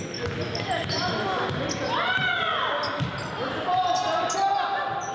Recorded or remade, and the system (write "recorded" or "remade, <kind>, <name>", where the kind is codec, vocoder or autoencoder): recorded